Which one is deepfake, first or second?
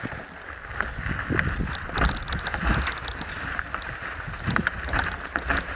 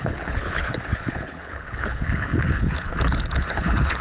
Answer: second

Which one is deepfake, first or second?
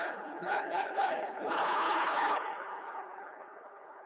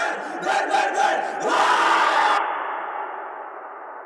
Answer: first